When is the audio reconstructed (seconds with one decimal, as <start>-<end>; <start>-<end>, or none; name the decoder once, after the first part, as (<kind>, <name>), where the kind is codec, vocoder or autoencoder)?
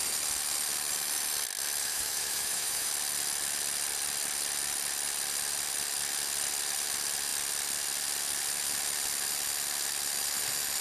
1.8-2.9 (autoencoder, DAC-VAE)